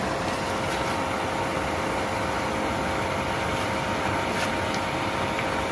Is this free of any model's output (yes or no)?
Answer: yes